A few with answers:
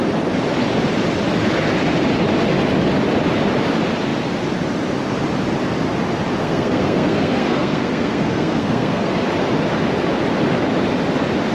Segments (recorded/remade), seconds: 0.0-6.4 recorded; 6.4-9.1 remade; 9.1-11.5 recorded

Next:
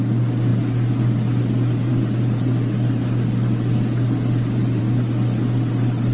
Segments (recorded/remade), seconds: 0.0-6.1 recorded

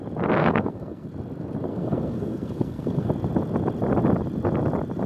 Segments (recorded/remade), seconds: 0.0-0.4 recorded; 0.4-1.1 remade; 1.1-1.7 recorded; 1.7-3.1 remade; 3.1-5.1 recorded